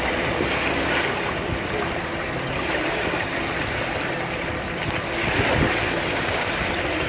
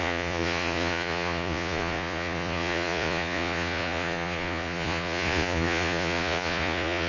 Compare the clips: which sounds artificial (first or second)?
second